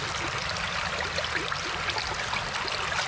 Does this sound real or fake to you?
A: real